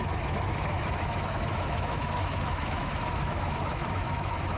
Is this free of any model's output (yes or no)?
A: no